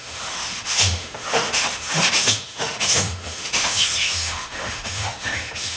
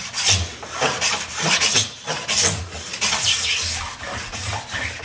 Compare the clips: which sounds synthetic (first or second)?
first